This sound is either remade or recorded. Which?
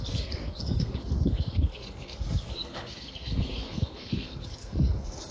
remade